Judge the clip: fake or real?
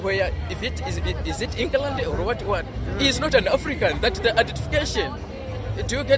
real